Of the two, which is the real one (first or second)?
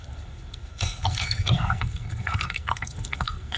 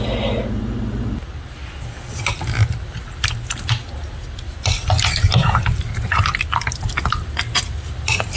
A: second